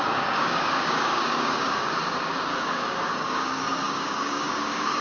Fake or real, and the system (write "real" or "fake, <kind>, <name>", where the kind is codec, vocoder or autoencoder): fake, codec, DAC